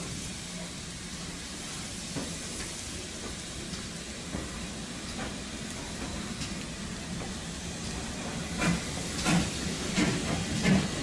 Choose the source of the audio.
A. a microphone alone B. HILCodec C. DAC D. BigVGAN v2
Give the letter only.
A